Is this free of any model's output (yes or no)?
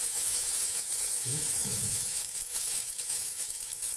no